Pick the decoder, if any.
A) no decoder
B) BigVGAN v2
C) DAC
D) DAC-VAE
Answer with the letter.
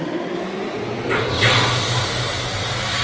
A